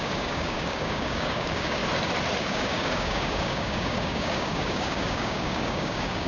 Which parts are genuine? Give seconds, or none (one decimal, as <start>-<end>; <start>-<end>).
1.8-2.4